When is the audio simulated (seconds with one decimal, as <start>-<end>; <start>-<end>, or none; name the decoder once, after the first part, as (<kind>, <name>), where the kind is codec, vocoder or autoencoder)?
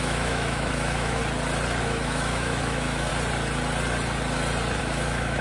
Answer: 0.0-1.2 (autoencoder, DAC-VAE); 1.8-3.1; 4.8-5.4